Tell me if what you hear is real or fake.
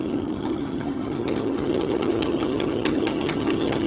fake